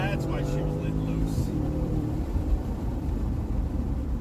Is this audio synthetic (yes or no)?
yes